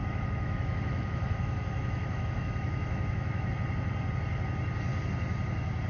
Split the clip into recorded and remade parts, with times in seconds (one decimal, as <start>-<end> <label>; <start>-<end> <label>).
0.0-3.5 remade; 3.5-5.9 recorded